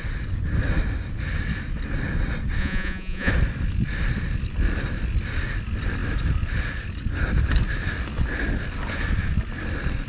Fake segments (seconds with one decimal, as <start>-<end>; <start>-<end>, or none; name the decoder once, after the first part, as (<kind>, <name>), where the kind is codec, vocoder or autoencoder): 2.6-3.3 (vocoder, Vocos)